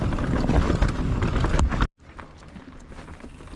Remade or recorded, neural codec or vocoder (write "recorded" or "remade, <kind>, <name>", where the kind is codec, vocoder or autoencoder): recorded